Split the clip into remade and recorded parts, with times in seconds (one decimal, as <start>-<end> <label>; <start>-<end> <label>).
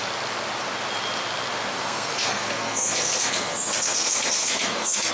0.0-1.7 recorded; 1.7-5.1 remade